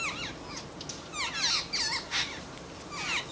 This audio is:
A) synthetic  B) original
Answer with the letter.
B